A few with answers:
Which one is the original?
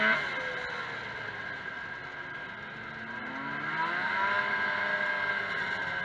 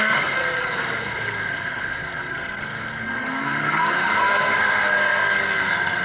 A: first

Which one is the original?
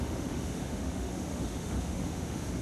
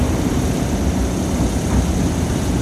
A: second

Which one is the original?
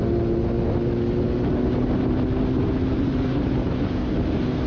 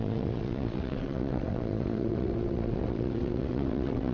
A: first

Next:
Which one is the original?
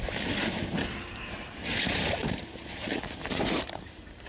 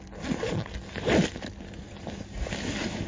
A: second